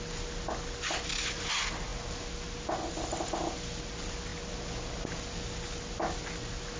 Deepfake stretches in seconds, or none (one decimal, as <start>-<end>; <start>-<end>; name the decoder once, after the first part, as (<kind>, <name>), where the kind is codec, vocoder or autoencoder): none